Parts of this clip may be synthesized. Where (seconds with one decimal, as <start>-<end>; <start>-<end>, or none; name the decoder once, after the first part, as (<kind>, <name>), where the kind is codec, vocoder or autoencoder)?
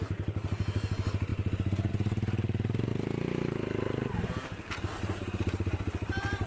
0.0-2.9 (vocoder, BigVGAN v2); 4.7-6.5